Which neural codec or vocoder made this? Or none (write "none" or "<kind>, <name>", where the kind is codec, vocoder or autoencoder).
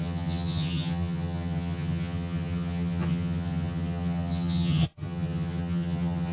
vocoder, HiFi-GAN